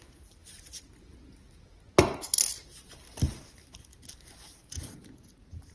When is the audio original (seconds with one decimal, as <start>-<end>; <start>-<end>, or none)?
0.0-5.7